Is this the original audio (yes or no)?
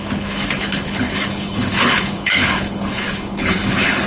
no